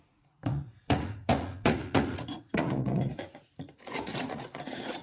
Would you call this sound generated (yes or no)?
yes